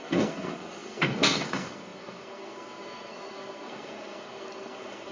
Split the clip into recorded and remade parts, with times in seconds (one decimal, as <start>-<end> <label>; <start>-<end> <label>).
0.0-5.1 remade